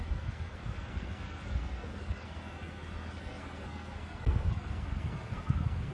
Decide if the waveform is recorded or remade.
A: remade